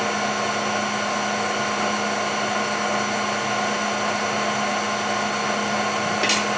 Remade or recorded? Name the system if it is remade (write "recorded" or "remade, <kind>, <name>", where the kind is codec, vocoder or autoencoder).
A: recorded